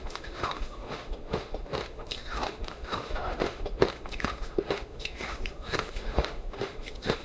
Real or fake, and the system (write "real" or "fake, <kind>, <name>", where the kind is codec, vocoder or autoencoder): fake, autoencoder, DAC-VAE